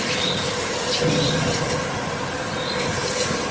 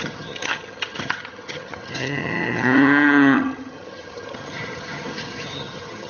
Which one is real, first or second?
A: first